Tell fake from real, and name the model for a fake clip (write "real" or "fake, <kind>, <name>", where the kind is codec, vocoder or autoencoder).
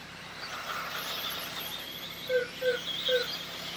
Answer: real